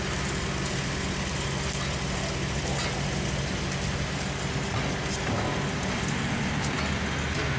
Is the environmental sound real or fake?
real